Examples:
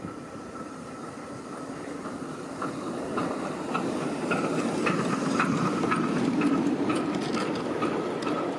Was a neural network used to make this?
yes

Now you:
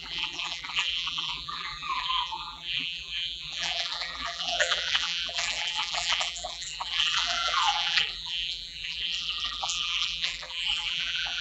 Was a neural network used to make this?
yes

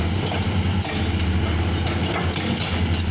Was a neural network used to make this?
no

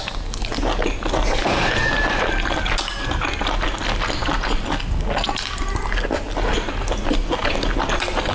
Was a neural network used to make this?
no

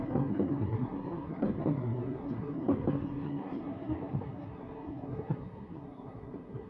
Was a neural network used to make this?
yes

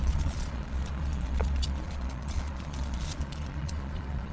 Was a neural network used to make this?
yes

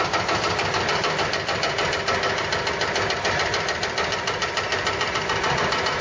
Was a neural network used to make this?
no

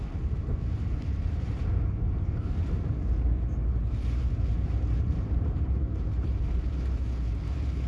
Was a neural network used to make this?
yes